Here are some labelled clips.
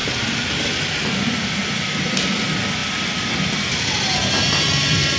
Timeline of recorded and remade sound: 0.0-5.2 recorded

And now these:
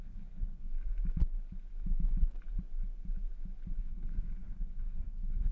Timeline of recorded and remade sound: 0.0-0.7 remade; 0.7-3.8 recorded; 3.8-5.5 remade

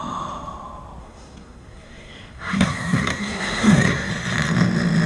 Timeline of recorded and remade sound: 0.0-1.0 recorded; 1.0-4.1 remade; 4.1-5.1 recorded

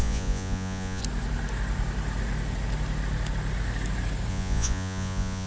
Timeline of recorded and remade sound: 0.0-1.0 remade; 1.0-4.3 recorded; 4.3-5.5 remade

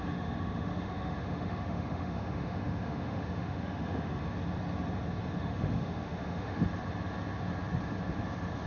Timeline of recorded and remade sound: 0.0-4.2 remade; 4.2-5.4 recorded; 5.4-6.6 remade; 6.6-8.7 recorded

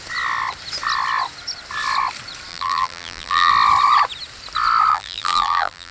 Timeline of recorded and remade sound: 0.0-2.5 recorded; 2.5-3.5 remade; 3.5-4.9 recorded; 4.9-5.9 remade

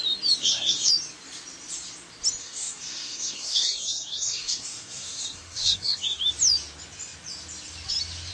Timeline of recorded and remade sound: 0.0-0.4 recorded; 0.4-0.9 remade; 0.9-2.4 recorded; 2.4-6.2 remade; 6.2-8.3 recorded

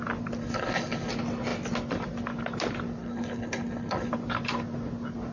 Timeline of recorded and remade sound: 0.0-0.4 recorded; 0.4-1.1 remade; 1.1-3.0 recorded; 3.0-4.1 remade; 4.1-5.3 recorded